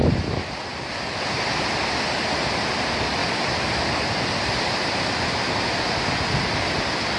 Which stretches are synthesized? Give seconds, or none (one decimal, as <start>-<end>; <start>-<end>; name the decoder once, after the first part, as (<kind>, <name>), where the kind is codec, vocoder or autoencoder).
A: none